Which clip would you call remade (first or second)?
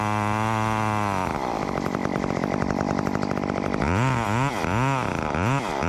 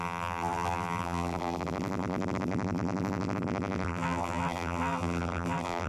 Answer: second